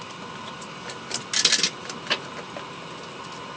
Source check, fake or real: real